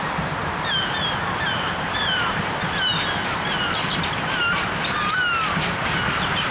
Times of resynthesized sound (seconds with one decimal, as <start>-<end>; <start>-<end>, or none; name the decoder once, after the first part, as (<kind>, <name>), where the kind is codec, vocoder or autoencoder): none